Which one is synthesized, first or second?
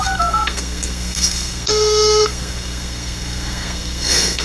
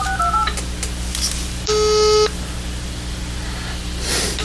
first